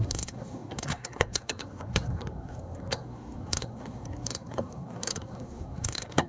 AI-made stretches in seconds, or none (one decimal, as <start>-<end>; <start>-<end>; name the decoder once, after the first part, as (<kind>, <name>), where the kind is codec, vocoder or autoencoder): 0.0-6.3 (codec, SNAC)